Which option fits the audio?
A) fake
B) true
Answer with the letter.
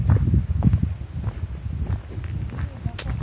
B